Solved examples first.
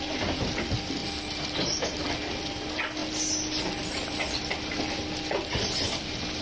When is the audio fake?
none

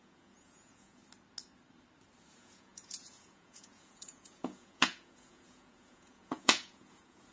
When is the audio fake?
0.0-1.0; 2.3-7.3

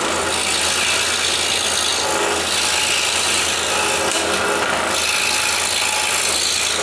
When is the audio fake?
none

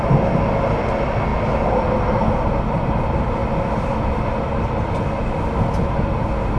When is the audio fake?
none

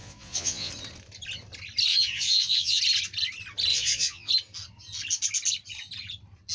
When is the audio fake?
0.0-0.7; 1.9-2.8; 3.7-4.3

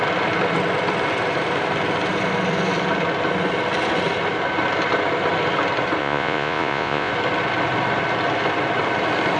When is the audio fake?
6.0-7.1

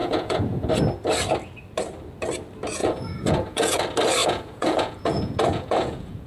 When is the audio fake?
0.0-0.7; 2.8-3.8; 4.2-6.3